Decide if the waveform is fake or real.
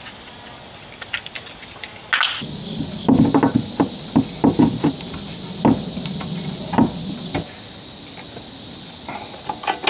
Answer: real